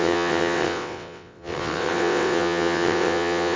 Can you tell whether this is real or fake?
fake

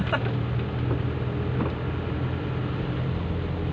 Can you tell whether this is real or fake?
real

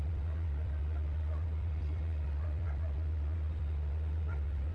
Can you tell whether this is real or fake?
fake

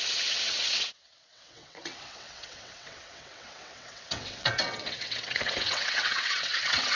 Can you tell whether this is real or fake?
fake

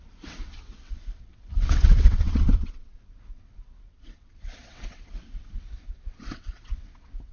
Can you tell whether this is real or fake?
fake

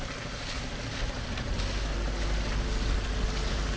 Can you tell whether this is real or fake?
real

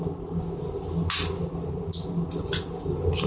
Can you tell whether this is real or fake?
real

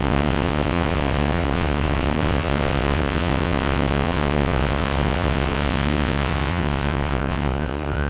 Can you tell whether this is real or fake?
fake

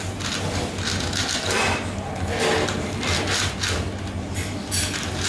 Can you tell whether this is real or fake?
real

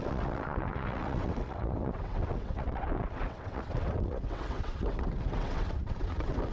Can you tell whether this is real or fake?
fake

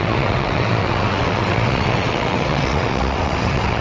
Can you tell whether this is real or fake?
fake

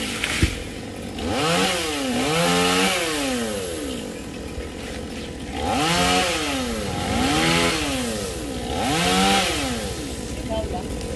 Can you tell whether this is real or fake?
real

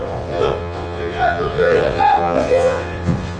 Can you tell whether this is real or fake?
fake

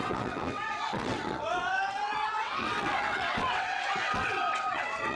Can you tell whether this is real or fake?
fake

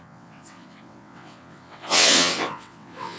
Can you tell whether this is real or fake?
fake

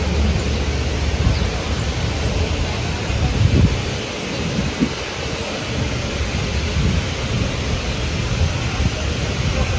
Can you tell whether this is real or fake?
real